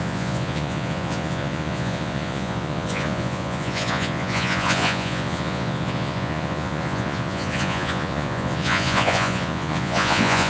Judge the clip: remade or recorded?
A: remade